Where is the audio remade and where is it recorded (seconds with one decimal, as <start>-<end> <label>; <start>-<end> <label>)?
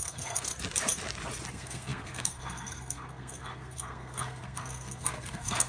0.0-0.5 remade; 0.5-1.5 recorded; 1.5-5.7 remade